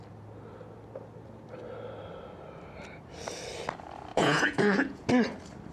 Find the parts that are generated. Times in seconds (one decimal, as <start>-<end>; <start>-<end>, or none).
4.1-5.1